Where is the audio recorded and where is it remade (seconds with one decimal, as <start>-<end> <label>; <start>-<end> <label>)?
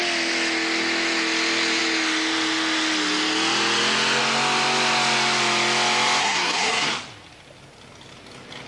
0.0-6.2 recorded; 6.2-6.9 remade; 6.9-8.7 recorded